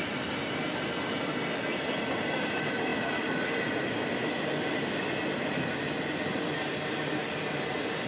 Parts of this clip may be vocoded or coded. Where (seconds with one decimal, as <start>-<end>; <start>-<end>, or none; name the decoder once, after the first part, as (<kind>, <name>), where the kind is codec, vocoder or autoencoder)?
none